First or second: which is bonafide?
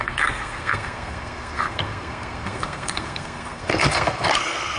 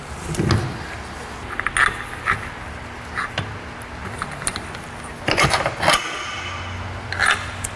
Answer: second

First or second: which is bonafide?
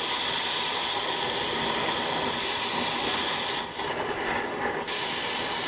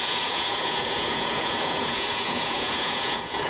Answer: first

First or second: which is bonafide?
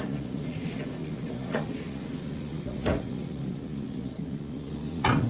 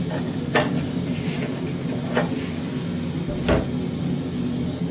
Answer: second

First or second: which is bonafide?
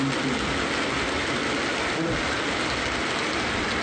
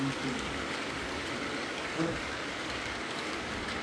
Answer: first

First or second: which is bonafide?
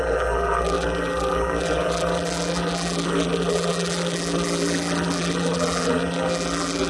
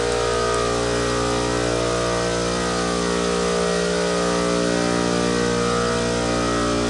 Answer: second